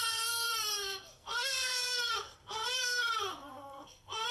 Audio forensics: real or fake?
fake